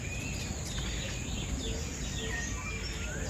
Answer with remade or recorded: recorded